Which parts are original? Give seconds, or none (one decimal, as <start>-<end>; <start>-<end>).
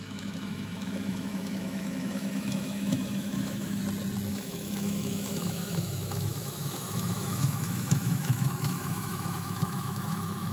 3.8-4.3